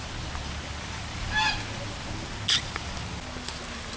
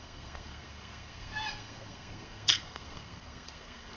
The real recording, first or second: first